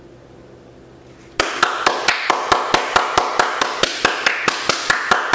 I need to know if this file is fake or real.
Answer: real